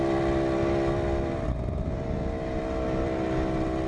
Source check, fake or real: real